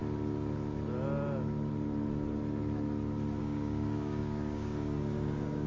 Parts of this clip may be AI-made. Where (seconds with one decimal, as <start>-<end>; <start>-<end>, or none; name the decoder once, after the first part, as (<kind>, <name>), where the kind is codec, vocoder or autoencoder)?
3.4-5.7 (codec, DAC)